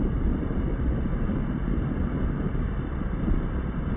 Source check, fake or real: fake